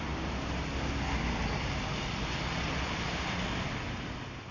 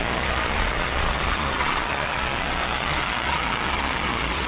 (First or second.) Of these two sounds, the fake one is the second